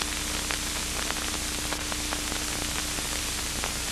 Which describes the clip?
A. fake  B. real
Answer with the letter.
B